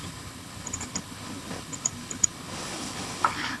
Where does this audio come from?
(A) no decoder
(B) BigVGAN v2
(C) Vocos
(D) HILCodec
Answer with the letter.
D